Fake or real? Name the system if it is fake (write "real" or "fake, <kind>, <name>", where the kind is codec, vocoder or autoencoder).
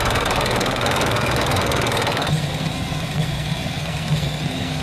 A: fake, codec, SNAC